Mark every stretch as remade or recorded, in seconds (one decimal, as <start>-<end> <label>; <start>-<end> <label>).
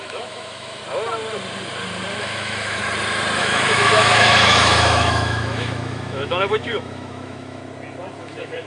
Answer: 0.0-0.8 remade; 0.8-2.2 recorded; 2.2-2.8 remade; 2.8-3.4 recorded; 3.4-7.6 remade; 7.6-8.2 recorded; 8.2-8.7 remade